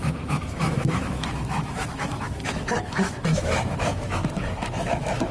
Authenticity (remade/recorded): remade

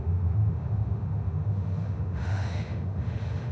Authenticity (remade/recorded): remade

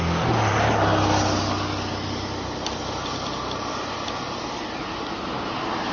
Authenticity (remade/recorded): recorded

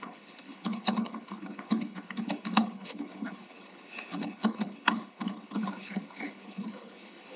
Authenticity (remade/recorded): remade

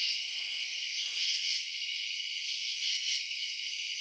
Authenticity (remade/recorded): remade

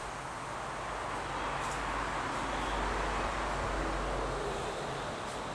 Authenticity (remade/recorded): recorded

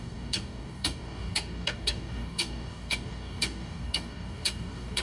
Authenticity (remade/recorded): remade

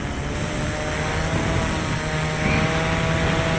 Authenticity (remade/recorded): recorded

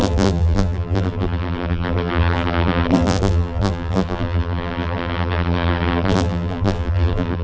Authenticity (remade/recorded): remade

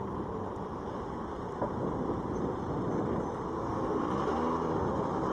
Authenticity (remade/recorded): recorded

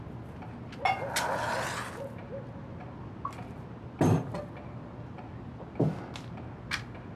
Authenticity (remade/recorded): recorded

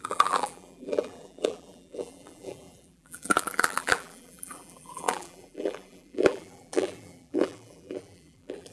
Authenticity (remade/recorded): remade